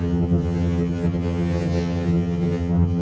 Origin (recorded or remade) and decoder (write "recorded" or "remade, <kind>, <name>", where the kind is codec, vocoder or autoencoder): remade, vocoder, HiFi-GAN